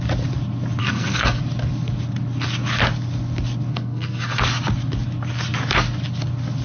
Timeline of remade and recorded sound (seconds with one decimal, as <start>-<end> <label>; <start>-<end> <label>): 0.0-0.8 recorded; 0.8-1.4 remade; 1.4-3.7 recorded; 3.7-4.4 remade; 4.4-6.6 recorded